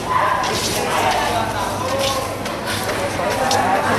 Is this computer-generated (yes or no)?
no